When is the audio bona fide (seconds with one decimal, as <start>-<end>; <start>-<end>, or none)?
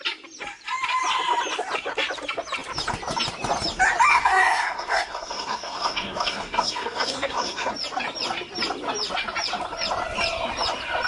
0.0-4.1; 7.7-11.1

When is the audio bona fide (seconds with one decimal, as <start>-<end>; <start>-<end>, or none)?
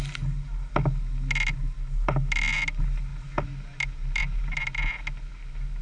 0.0-5.8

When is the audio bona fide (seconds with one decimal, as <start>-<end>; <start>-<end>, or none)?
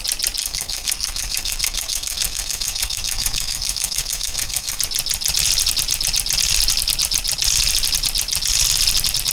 0.0-0.4; 4.8-9.3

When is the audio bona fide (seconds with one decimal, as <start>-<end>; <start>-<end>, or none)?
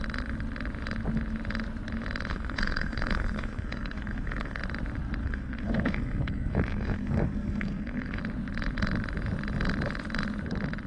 0.0-2.3; 4.6-5.2; 8.2-10.9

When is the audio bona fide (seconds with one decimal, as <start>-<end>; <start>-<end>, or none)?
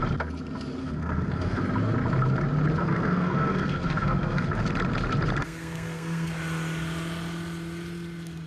0.0-0.8; 1.6-2.8; 4.6-5.4; 6.3-8.5